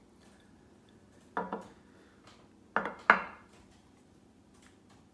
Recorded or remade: recorded